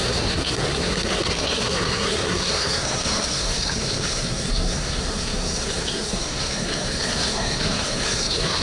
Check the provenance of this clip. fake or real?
fake